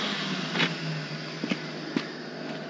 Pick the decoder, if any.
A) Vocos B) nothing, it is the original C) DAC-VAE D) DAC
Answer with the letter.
B